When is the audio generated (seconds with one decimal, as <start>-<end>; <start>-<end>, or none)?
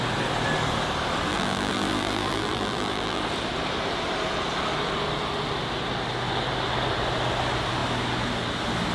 1.3-3.2